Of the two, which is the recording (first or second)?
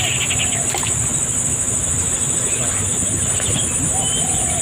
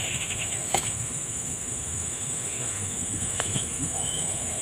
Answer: first